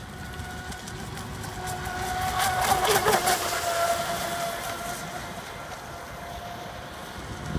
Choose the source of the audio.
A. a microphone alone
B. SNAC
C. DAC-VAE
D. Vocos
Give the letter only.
A